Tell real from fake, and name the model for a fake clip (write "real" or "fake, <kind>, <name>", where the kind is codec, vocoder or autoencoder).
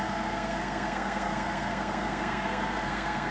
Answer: fake, codec, SNAC